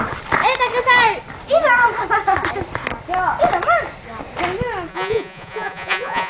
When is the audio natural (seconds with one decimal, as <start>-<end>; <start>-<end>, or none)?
0.0-4.9